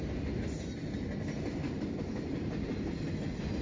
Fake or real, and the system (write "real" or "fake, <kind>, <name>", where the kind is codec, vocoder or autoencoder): real